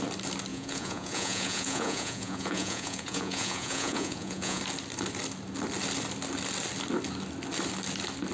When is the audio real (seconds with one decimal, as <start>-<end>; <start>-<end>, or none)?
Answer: 0.0-0.5; 4.6-8.3